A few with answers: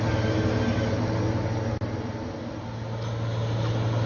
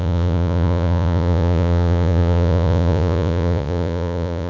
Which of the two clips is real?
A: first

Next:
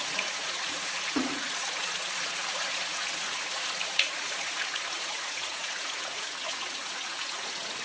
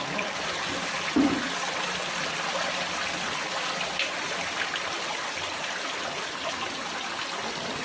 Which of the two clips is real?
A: second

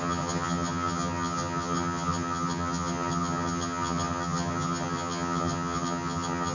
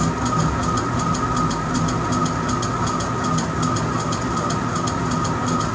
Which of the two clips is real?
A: second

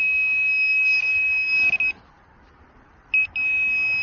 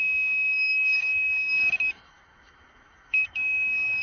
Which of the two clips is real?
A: first